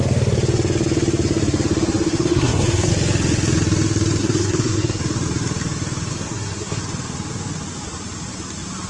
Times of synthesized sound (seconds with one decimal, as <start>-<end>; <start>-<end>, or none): 2.1-2.9; 4.2-5.0; 6.1-6.8